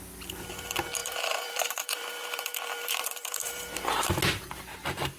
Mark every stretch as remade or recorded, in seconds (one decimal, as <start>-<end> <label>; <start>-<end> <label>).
0.0-1.0 recorded; 1.0-4.1 remade; 4.1-5.2 recorded